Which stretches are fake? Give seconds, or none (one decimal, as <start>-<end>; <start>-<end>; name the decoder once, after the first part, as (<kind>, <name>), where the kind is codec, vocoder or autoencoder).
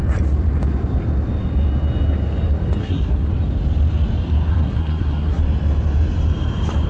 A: 2.8-3.3 (codec, SNAC); 4.5-5.4